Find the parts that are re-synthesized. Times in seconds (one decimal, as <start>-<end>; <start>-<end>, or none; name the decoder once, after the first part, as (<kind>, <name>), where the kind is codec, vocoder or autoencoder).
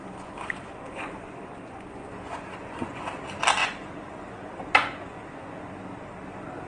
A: 0.0-3.0 (vocoder, Vocos); 3.6-5.6